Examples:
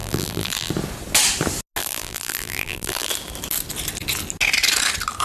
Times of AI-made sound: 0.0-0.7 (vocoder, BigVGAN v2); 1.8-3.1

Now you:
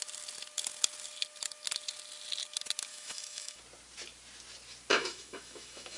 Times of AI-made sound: 2.9-3.6 (autoencoder, DAC-VAE); 4.9-6.0

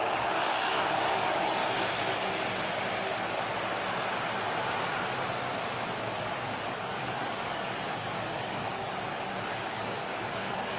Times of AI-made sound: 0.0-1.6 (codec, DAC); 6.2-10.8

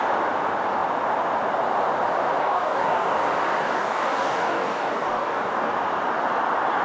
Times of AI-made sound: 2.4-3.2 (codec, DAC); 3.6-5.7

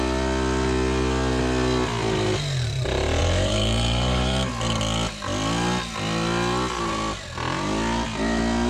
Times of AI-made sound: 3.2-4.5 (vocoder, BigVGAN v2)

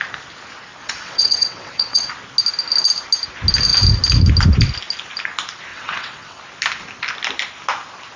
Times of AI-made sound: 0.8-2.1 (vocoder, WaveNeXt); 5.7-6.4

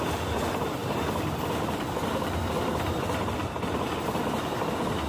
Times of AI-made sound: 0.8-3.9 (vocoder, BigVGAN v2)